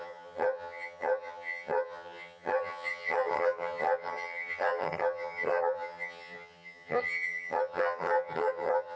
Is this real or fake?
fake